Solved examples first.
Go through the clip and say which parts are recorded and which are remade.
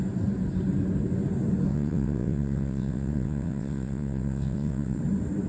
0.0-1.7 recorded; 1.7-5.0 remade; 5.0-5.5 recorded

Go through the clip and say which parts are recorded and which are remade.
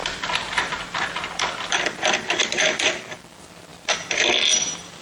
0.0-3.0 remade; 3.0-3.7 recorded; 3.7-5.0 remade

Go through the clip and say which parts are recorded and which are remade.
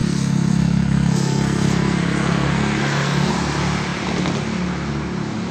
0.0-3.3 remade; 3.3-5.5 recorded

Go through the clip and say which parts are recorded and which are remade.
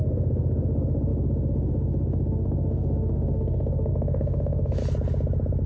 0.0-4.8 remade; 4.8-5.7 recorded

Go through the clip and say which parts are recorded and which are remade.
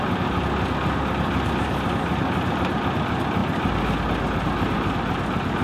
0.0-5.6 recorded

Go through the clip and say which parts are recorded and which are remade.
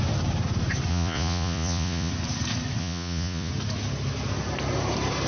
0.0-0.9 recorded; 0.9-2.1 remade; 2.1-2.8 recorded; 2.8-3.5 remade; 3.5-5.3 recorded